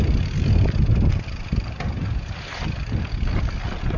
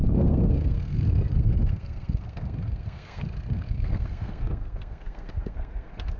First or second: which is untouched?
first